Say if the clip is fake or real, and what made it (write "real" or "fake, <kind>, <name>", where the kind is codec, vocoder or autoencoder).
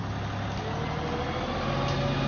real